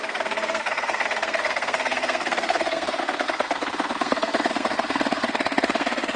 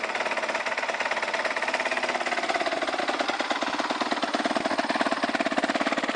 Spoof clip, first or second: first